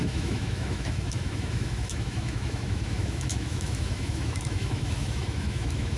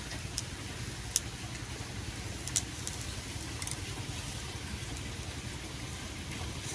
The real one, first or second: second